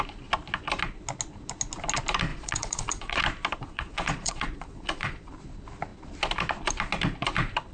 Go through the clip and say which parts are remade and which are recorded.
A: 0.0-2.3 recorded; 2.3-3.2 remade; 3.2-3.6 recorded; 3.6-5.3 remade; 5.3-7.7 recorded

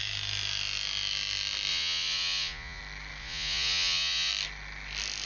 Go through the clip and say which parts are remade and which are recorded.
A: 0.0-1.7 recorded; 1.7-2.8 remade; 2.8-3.2 recorded; 3.2-4.3 remade; 4.3-5.3 recorded

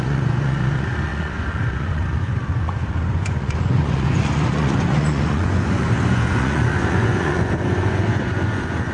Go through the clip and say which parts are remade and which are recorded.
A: 0.0-8.9 remade

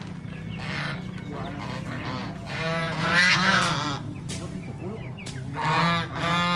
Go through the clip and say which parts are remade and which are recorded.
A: 0.0-2.2 recorded; 2.2-3.6 remade; 3.6-6.6 recorded